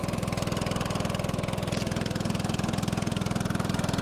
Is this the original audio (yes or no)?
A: yes